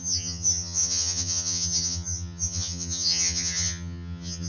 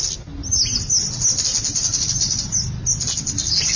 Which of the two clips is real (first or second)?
second